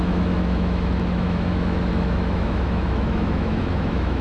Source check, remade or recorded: remade